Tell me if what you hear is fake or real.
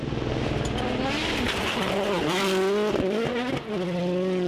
real